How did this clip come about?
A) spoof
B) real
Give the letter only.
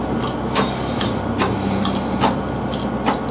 B